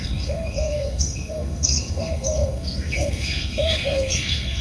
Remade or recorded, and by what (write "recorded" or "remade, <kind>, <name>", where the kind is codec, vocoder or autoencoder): remade, codec, SNAC